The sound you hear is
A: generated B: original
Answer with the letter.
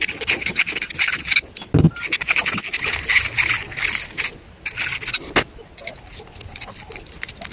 B